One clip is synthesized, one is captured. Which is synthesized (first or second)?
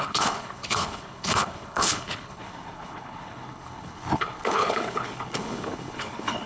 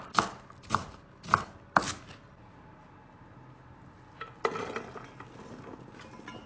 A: first